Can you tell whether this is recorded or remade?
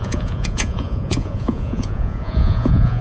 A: remade